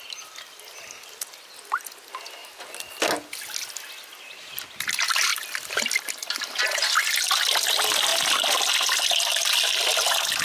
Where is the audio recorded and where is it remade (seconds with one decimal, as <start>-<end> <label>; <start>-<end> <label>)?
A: 0.0-5.3 recorded; 5.3-6.6 remade; 6.6-10.4 recorded